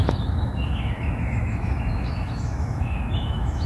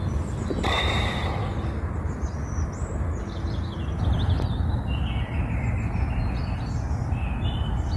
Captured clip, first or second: second